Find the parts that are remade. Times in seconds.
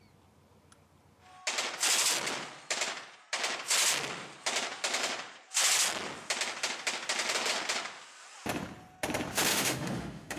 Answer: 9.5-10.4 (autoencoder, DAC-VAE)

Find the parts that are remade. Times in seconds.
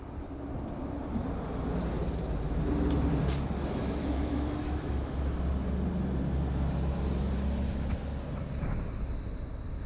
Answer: 3.8-5.1 (autoencoder, DAC-VAE)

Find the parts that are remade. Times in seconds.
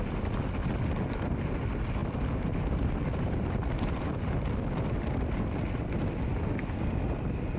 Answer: 2.0-4.5 (vocoder, BigVGAN v2)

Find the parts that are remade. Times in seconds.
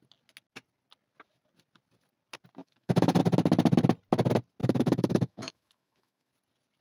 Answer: 2.6-3.2 (autoencoder, DAC-VAE); 4.6-6.3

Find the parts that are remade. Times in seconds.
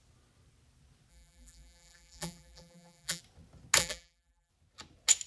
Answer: 1.1-3.2 (vocoder, BigVGAN v2); 3.8-4.5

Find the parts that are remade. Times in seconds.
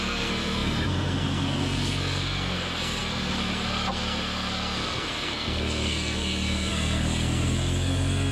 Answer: 0.0-8.3 (codec, SNAC)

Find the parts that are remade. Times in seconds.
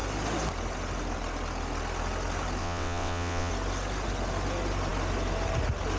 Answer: 2.6-3.5 (vocoder, WaveNeXt)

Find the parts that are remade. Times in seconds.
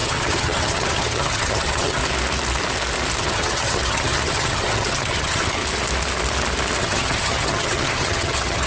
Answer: 0.0-2.0 (vocoder, HiFi-GAN); 3.2-5.6; 6.8-8.7